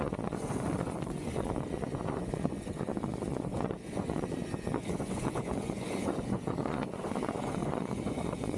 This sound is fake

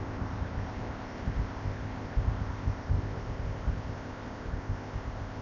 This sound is fake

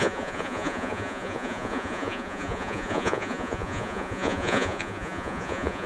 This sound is fake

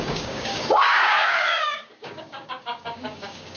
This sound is fake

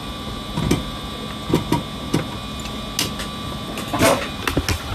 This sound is real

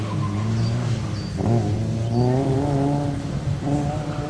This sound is real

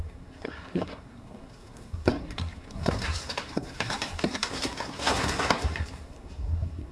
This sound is fake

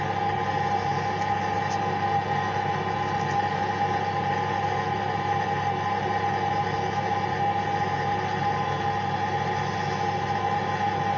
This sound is real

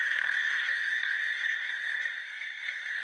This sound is fake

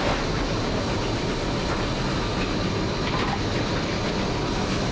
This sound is real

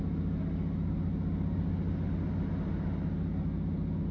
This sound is real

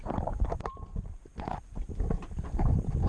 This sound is fake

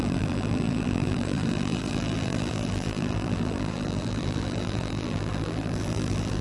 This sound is fake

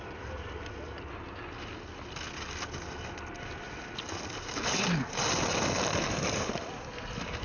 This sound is real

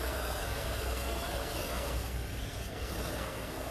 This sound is fake